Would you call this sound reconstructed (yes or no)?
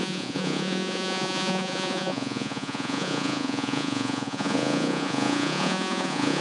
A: yes